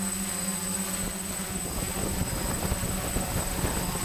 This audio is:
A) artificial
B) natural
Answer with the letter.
B